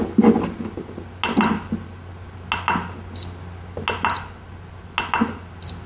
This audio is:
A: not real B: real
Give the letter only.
B